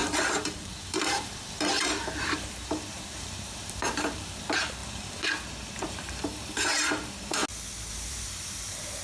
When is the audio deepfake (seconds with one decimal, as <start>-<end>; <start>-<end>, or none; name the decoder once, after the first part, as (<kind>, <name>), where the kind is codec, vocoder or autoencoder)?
0.0-7.4 (vocoder, BigVGAN v2); 7.9-9.0